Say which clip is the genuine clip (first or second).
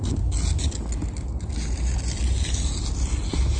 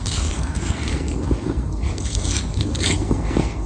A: first